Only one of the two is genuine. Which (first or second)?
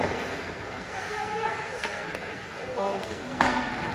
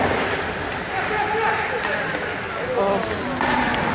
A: second